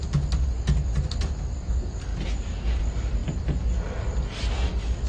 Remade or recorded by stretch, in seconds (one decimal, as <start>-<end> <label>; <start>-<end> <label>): 0.0-5.1 recorded

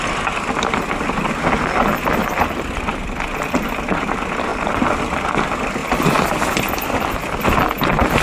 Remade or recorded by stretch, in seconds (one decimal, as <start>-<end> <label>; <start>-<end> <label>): 0.0-8.2 recorded

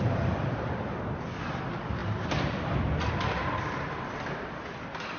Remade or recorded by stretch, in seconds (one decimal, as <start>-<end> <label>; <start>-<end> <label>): 0.0-5.2 recorded

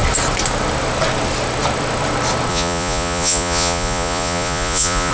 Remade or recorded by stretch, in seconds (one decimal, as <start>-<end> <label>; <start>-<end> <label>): 0.0-2.5 recorded; 2.5-5.1 remade

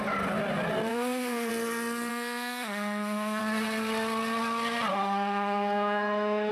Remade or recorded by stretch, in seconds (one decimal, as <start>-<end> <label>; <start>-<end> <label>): 0.0-0.9 recorded; 0.9-1.5 remade; 1.5-2.1 recorded; 2.1-3.4 remade; 3.4-4.9 recorded; 4.9-6.5 remade

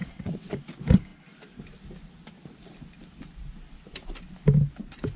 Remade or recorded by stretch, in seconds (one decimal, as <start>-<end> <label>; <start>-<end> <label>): 0.0-0.5 remade; 0.5-5.2 recorded

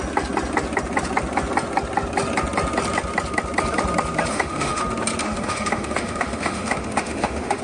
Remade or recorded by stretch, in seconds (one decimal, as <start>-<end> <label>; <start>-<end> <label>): 0.0-4.3 recorded; 4.3-4.8 remade; 4.8-5.2 recorded; 5.2-7.6 remade